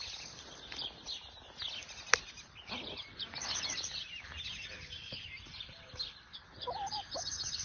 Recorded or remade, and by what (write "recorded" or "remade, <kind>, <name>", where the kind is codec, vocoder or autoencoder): recorded